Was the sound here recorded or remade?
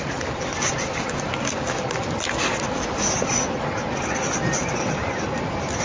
recorded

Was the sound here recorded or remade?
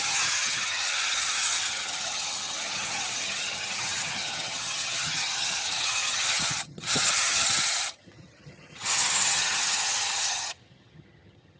remade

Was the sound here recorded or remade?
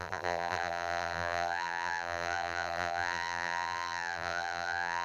remade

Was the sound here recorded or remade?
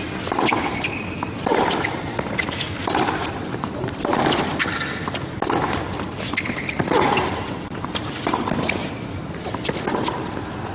recorded